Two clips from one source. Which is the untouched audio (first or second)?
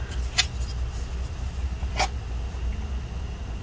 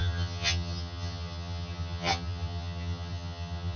first